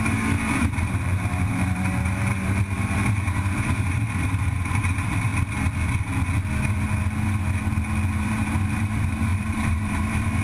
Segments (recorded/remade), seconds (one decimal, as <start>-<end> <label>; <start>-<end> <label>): 0.0-5.3 remade; 5.3-8.2 recorded; 8.2-10.4 remade